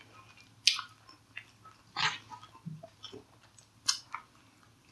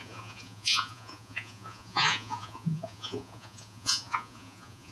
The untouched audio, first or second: first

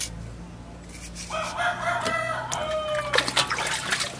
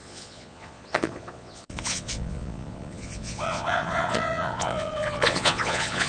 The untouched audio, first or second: first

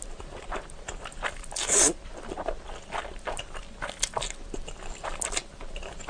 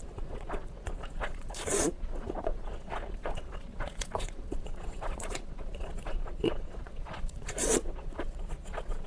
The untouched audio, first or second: first